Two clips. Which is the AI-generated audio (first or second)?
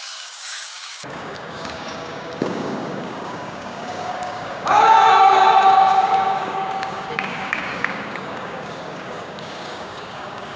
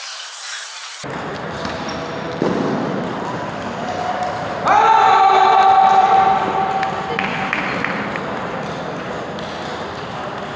first